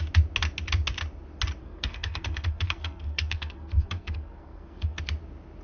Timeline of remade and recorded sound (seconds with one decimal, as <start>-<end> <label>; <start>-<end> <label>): 0.0-1.6 recorded; 1.6-5.0 remade; 5.0-5.6 recorded